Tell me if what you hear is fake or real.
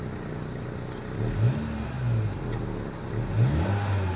real